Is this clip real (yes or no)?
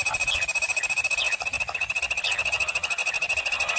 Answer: yes